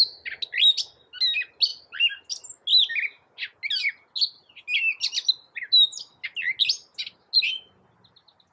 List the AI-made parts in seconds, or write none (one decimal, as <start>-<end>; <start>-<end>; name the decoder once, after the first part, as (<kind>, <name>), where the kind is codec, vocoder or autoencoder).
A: none